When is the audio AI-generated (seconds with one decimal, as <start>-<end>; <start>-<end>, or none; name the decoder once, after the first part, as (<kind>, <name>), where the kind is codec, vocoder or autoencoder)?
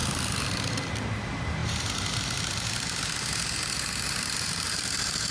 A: none